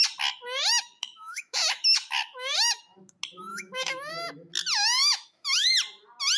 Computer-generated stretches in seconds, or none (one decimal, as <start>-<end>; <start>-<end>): 0.7-2.8; 3.5-4.1; 5.0-5.7